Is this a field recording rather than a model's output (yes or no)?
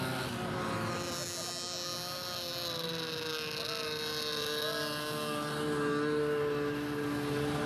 yes